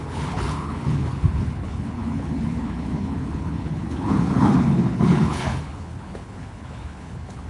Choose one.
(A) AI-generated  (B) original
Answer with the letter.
A